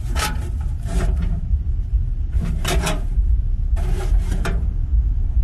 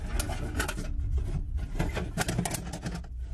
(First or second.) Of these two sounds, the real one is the second